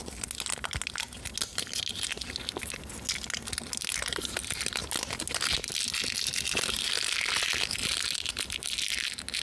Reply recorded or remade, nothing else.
recorded